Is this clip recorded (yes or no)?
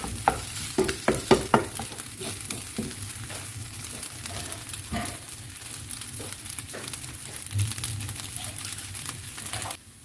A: no